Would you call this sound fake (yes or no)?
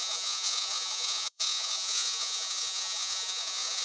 yes